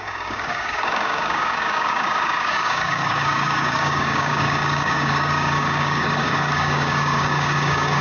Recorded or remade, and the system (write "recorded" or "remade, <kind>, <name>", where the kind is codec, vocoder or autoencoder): remade, codec, DAC